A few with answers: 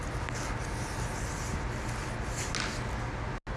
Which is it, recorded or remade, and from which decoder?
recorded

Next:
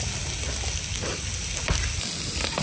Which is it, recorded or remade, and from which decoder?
recorded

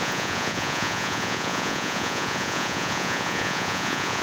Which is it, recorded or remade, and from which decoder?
remade, vocoder, Vocos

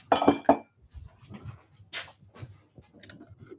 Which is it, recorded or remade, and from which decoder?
recorded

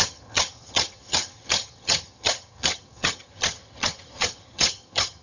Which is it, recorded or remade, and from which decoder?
remade, vocoder, HiFi-GAN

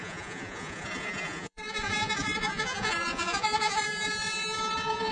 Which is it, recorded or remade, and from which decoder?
remade, vocoder, Vocos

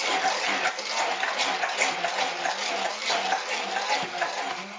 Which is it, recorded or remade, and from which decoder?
recorded